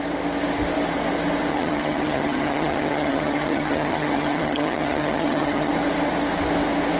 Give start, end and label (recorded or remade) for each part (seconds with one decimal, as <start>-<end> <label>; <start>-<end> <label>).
0.0-1.5 recorded; 1.5-5.7 remade; 5.7-7.0 recorded